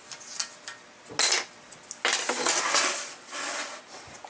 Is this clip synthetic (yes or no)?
no